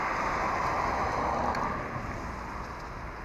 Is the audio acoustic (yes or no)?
yes